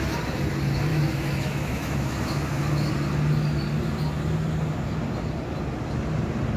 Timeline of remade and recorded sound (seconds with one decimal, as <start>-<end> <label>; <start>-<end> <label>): 0.0-0.9 recorded; 0.9-2.9 remade; 2.9-6.6 recorded